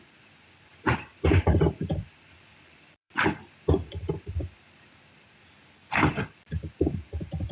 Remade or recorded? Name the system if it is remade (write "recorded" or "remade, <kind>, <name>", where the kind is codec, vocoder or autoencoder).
remade, vocoder, BigVGAN v2